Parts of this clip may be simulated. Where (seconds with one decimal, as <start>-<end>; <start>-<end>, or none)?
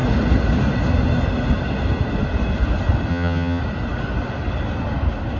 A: 3.1-3.6